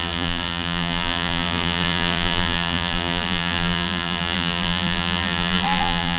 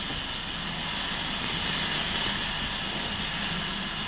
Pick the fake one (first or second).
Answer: first